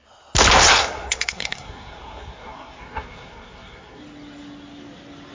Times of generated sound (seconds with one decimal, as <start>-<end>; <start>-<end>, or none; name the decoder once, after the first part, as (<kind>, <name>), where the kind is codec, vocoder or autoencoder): 0.8-4.0 (codec, SNAC)